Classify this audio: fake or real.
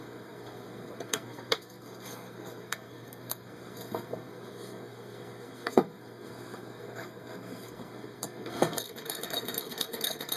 fake